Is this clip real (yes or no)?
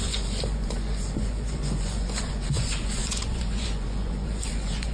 no